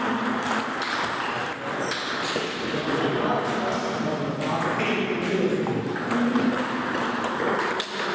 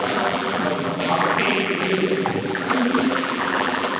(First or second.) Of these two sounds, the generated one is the second